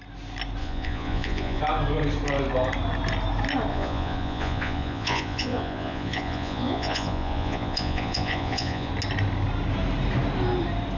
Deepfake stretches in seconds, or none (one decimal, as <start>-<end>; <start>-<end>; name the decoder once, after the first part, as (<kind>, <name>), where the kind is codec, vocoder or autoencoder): 0.6-1.6 (vocoder, Vocos); 3.7-8.9